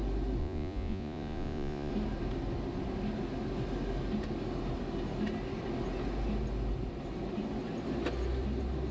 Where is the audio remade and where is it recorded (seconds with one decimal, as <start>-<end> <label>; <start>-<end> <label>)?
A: 0.0-0.4 recorded; 0.4-1.9 remade; 1.9-8.9 recorded